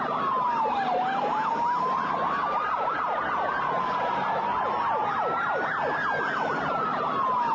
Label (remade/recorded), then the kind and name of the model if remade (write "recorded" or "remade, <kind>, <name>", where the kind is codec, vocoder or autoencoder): recorded